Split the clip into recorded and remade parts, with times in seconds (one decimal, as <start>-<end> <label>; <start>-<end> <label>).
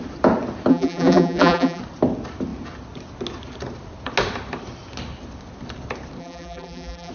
0.0-0.7 recorded; 0.7-1.8 remade; 1.8-6.2 recorded; 6.2-7.1 remade